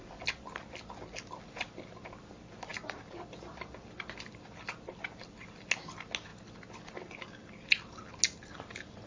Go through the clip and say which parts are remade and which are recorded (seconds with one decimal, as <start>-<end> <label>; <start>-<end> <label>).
0.0-9.1 recorded

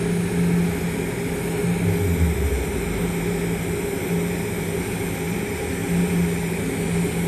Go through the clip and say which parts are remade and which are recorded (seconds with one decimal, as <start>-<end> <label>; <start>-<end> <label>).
0.0-7.3 recorded

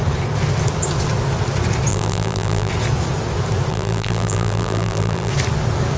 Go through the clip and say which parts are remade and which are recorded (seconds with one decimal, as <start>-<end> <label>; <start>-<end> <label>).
0.0-1.9 recorded; 1.9-2.7 remade; 2.7-3.7 recorded; 3.7-5.3 remade; 5.3-6.0 recorded

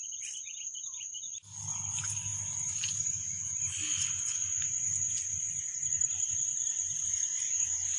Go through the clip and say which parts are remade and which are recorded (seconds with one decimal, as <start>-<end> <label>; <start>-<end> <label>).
0.0-8.0 recorded

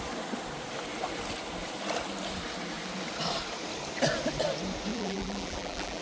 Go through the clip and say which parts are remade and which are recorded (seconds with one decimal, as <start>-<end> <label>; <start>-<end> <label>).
0.0-4.9 recorded; 4.9-6.0 remade

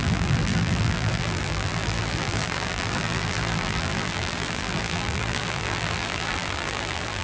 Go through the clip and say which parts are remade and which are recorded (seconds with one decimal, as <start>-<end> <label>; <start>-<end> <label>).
0.0-7.2 remade

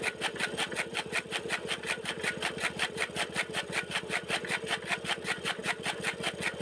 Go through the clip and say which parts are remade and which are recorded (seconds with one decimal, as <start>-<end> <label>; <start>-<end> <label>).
0.0-6.6 recorded